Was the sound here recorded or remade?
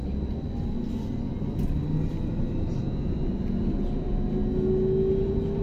recorded